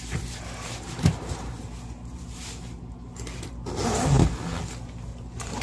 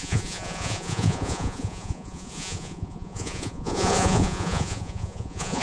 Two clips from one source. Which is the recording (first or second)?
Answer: first